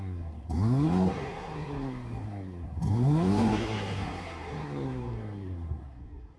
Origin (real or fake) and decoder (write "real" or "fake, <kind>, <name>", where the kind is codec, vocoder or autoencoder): fake, codec, SNAC